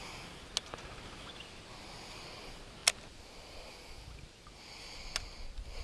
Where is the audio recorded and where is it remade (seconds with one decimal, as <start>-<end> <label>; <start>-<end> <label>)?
0.0-5.8 recorded

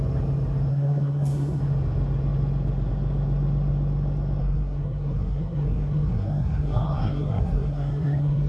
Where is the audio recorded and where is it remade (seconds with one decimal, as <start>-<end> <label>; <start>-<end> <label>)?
0.0-0.7 recorded; 0.7-1.6 remade; 1.6-4.4 recorded; 4.4-8.5 remade

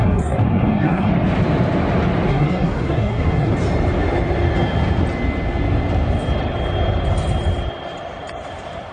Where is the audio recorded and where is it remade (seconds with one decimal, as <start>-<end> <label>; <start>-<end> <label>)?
0.0-1.1 remade; 1.1-2.3 recorded; 2.3-3.5 remade; 3.5-8.9 recorded

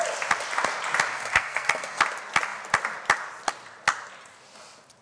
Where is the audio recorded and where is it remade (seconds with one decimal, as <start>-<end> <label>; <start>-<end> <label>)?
0.0-1.1 recorded; 1.1-2.0 remade; 2.0-5.0 recorded